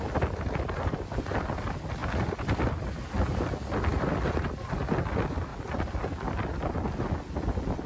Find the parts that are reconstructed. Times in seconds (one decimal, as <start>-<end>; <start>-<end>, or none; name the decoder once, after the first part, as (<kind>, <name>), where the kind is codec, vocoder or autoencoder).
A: 0.0-5.5 (vocoder, BigVGAN v2); 6.7-7.9